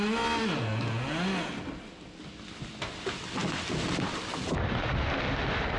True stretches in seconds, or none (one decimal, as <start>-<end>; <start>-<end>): 0.0-3.4; 4.3-5.8